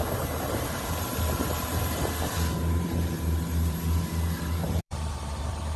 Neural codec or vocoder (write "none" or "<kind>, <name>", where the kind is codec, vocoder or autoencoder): vocoder, BigVGAN v2